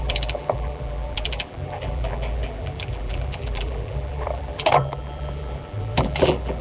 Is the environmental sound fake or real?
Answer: fake